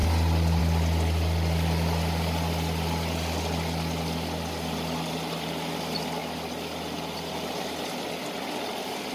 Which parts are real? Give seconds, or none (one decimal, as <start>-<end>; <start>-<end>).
0.0-9.1